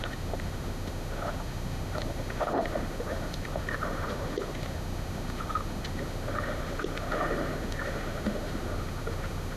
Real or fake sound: fake